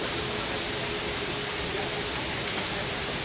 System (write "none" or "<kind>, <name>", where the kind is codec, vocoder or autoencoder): none